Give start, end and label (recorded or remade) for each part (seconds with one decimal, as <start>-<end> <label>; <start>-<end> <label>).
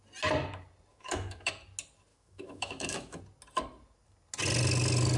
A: 0.0-0.9 recorded; 0.9-1.5 remade; 1.5-2.1 recorded; 2.1-3.2 remade; 3.2-5.2 recorded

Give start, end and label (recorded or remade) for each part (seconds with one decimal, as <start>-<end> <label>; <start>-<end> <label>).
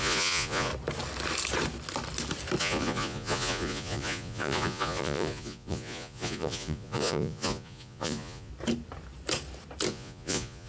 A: 0.0-0.7 remade; 0.7-2.6 recorded; 2.6-8.5 remade; 8.5-9.9 recorded; 9.9-10.7 remade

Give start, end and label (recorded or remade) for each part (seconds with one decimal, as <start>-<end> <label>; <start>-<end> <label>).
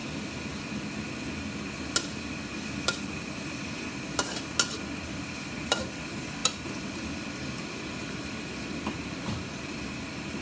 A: 0.0-4.8 recorded; 4.8-10.4 remade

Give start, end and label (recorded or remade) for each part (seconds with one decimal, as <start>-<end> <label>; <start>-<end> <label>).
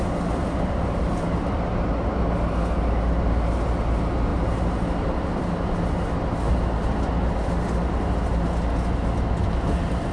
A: 0.0-10.1 recorded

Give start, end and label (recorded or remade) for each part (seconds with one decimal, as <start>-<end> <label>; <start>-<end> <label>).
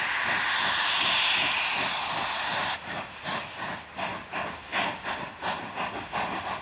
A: 0.0-6.6 recorded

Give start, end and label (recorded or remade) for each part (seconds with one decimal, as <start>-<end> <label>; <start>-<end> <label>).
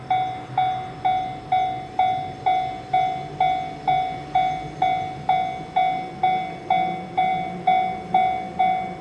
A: 0.0-9.0 recorded